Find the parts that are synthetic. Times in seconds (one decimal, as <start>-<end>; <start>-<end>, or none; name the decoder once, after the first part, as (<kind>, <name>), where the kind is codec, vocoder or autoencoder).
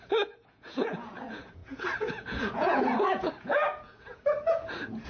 0.0-5.1 (vocoder, Vocos)